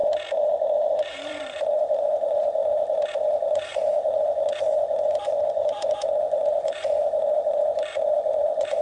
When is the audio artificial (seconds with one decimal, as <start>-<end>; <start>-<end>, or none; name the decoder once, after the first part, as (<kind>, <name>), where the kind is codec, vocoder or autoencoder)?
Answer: 0.9-2.6 (vocoder, Vocos); 3.2-8.8